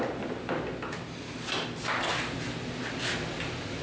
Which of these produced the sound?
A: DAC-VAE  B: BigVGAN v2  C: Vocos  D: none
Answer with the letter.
D